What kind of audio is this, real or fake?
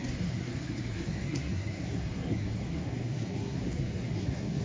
fake